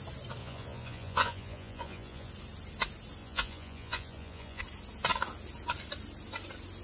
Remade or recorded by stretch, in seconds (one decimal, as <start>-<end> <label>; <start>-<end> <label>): 0.0-0.4 recorded; 0.4-2.3 remade; 2.3-3.2 recorded; 3.2-4.6 remade; 4.6-6.8 recorded